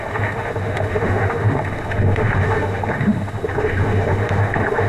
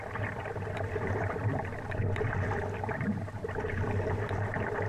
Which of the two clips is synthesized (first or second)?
first